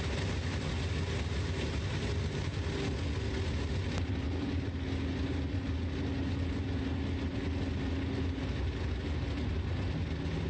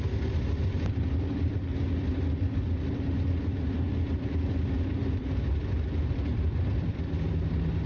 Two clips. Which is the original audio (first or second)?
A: first